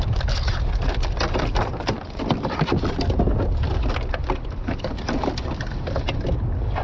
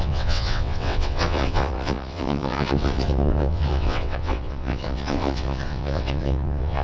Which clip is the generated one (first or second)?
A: second